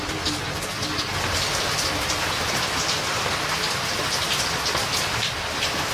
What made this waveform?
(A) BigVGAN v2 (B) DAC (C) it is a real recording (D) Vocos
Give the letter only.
C